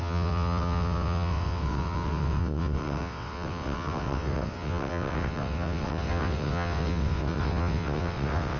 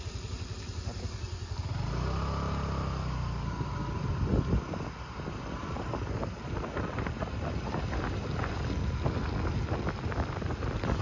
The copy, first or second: first